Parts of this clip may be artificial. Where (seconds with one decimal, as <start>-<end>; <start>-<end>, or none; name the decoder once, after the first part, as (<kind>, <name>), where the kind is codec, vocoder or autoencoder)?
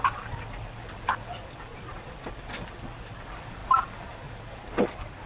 1.7-2.2 (vocoder, Vocos)